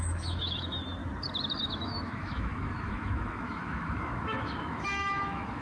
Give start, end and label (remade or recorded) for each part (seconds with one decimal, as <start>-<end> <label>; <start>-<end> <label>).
0.0-1.0 remade; 1.0-1.6 recorded; 1.6-5.6 remade